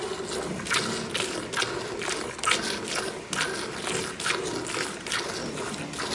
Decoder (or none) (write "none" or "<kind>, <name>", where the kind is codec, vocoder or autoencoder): none